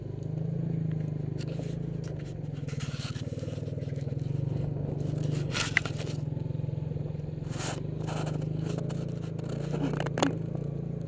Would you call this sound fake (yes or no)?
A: no